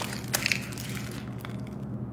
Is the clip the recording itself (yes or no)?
yes